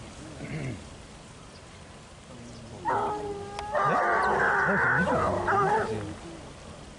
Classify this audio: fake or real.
real